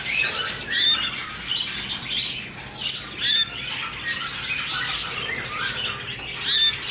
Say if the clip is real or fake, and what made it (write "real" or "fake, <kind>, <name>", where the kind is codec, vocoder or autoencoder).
real